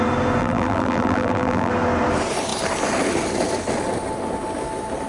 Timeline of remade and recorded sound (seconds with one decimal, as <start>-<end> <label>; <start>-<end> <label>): 0.0-0.4 recorded; 0.4-1.7 remade; 1.7-5.1 recorded